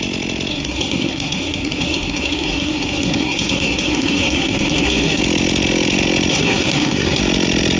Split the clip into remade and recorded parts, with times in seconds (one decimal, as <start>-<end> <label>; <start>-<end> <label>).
0.0-0.5 recorded; 0.5-5.2 remade; 5.2-6.3 recorded; 6.3-7.2 remade; 7.2-7.8 recorded